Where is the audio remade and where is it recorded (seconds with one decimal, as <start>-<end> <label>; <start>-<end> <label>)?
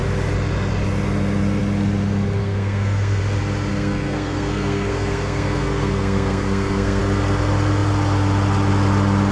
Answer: 0.0-2.4 recorded; 2.4-3.2 remade; 3.2-3.7 recorded; 3.7-7.0 remade; 7.0-9.3 recorded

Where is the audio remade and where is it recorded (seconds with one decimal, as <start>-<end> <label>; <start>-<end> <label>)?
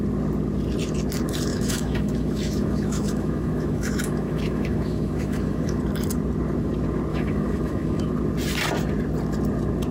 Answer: 0.0-1.5 recorded; 1.5-5.8 remade; 5.8-7.1 recorded; 7.1-8.1 remade; 8.1-9.9 recorded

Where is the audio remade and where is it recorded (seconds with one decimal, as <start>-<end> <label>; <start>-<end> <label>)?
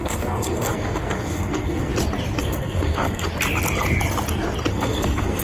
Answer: 0.0-1.9 remade; 1.9-2.4 recorded; 2.4-3.3 remade; 3.3-4.7 recorded; 4.7-5.4 remade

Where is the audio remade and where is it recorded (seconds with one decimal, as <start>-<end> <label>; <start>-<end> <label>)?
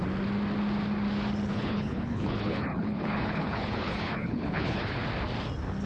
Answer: 0.0-1.5 recorded; 1.5-5.0 remade; 5.0-5.9 recorded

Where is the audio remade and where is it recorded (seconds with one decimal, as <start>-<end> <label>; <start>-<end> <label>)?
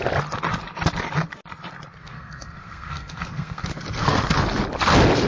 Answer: 0.0-2.0 recorded; 2.0-4.2 remade; 4.2-5.3 recorded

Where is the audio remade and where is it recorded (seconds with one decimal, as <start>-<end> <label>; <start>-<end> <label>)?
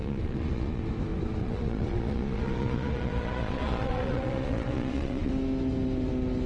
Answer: 0.0-0.8 remade; 0.8-1.4 recorded; 1.4-5.3 remade; 5.3-6.5 recorded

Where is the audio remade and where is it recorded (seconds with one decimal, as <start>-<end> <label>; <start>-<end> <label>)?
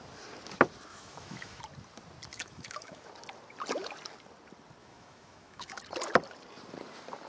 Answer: 0.0-0.9 recorded; 0.9-1.6 remade; 1.6-2.3 recorded; 2.3-3.1 remade; 3.1-4.8 recorded; 4.8-5.8 remade; 5.8-7.3 recorded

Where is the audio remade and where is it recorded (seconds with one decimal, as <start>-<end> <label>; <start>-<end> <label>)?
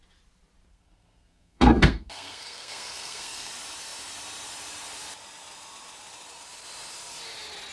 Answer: 0.0-0.7 recorded; 0.7-3.5 remade; 3.5-7.7 recorded